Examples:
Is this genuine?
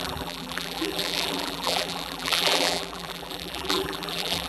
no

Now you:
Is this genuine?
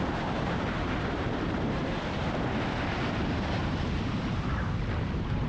no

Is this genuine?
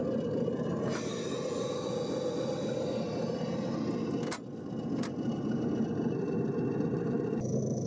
yes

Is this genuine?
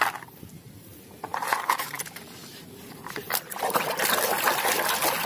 no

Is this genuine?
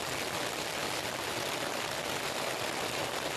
yes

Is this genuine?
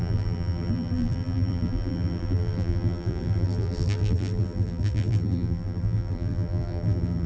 no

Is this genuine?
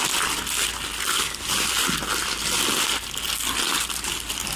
yes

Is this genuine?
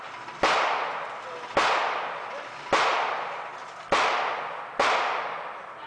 yes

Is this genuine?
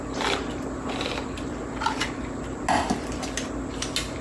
yes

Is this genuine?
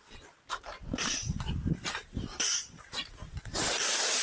no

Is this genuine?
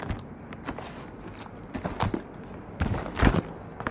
yes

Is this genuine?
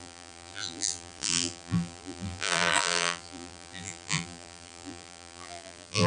no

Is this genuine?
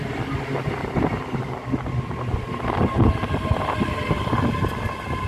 yes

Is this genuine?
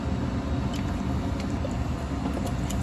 yes